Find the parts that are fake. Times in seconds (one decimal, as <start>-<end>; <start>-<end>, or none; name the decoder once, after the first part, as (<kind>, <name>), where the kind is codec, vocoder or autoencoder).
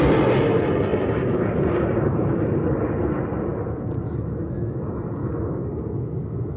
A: 0.9-2.7 (vocoder, BigVGAN v2)